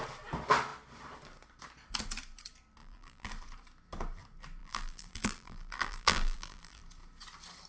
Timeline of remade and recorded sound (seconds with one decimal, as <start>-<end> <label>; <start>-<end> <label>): 0.0-2.8 recorded; 2.8-3.3 remade; 3.3-4.6 recorded; 4.6-6.8 remade; 6.8-7.7 recorded